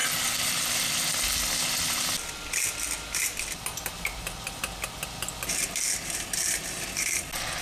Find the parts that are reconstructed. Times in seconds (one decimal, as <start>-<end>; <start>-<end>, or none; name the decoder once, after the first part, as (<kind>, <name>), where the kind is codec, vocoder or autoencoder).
none